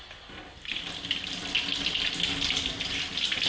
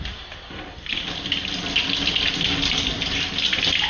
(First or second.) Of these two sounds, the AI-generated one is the second